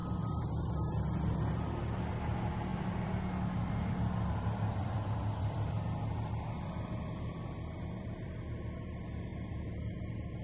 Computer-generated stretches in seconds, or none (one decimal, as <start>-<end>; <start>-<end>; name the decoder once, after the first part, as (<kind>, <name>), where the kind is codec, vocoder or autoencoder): 0.0-0.7 (vocoder, BigVGAN v2); 2.7-3.2; 3.6-8.3